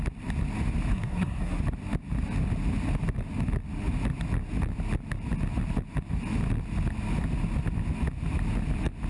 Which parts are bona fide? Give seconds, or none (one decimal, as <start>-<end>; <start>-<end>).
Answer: 0.0-0.9; 1.6-9.1